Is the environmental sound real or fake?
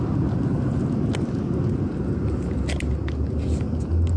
real